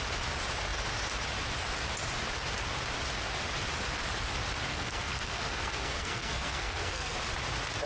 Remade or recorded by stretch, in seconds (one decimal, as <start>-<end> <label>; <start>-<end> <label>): 0.0-4.7 recorded; 4.7-7.2 remade; 7.2-7.9 recorded